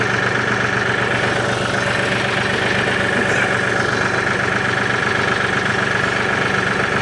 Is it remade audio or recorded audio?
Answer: recorded